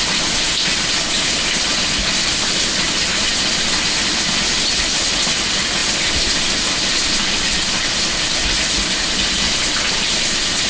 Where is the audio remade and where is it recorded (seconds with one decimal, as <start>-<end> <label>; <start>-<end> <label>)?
0.0-10.7 recorded